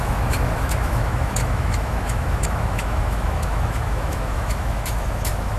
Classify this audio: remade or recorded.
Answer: remade